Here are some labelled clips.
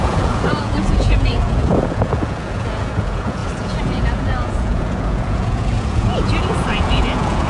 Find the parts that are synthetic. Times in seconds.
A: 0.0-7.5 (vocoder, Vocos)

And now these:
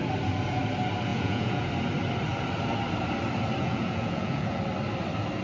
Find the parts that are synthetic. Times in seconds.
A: 1.1-1.7 (vocoder, Vocos); 3.6-4.6

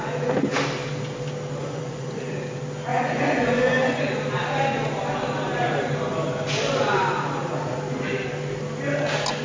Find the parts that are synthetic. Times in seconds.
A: 1.6-2.3 (vocoder, Vocos); 2.9-4.0

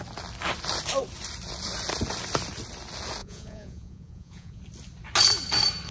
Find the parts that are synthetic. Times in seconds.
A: 3.2-4.6 (vocoder, Vocos)

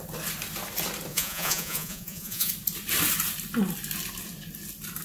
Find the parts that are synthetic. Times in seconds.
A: 1.1-2.5 (vocoder, Vocos)

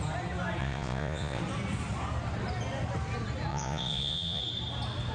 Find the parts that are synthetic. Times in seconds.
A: 0.6-1.4 (vocoder, Vocos); 3.5-4.4

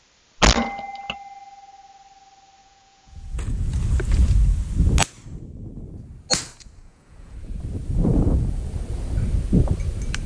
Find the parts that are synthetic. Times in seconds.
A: 2.6-3.7 (vocoder, Vocos); 6.8-7.6; 8.1-8.7

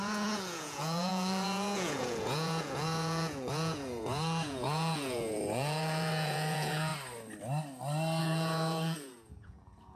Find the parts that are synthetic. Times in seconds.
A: 0.0-6.9 (vocoder, Vocos); 8.2-10.0